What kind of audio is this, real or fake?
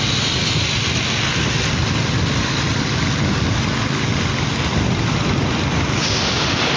real